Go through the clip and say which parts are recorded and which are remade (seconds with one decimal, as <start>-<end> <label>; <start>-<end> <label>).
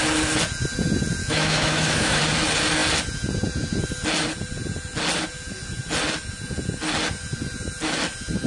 0.0-1.2 recorded; 1.2-2.2 remade; 2.2-8.5 recorded